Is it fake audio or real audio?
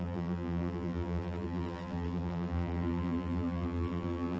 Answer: fake